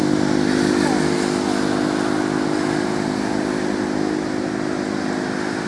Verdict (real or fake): real